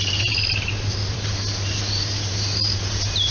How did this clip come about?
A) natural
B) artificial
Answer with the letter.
B